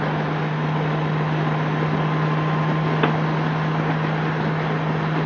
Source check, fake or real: real